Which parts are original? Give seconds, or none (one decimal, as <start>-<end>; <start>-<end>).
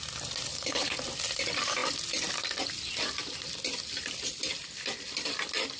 0.0-0.5; 1.0-5.8